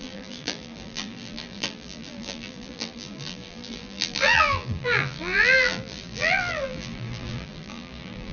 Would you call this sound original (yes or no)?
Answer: no